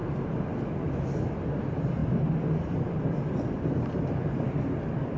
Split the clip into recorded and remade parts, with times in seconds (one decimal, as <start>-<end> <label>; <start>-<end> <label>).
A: 0.0-2.0 recorded; 2.0-5.2 remade